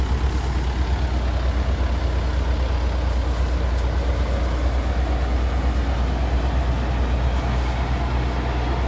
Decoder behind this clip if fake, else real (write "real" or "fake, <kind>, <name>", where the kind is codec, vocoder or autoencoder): real